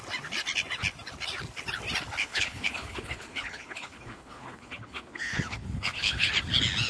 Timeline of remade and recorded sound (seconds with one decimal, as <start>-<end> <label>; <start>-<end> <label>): 0.0-2.2 recorded; 2.2-6.3 remade; 6.3-6.9 recorded